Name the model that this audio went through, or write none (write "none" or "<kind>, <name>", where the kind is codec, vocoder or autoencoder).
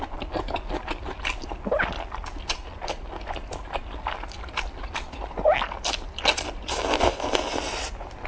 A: none